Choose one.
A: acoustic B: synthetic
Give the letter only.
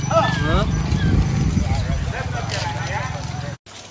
A